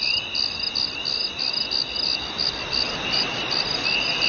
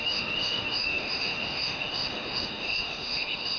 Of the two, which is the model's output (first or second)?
second